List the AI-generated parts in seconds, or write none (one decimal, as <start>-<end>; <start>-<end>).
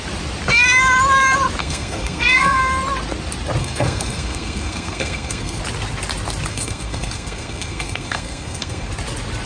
1.6-2.6; 3.6-5.6; 6.5-8.9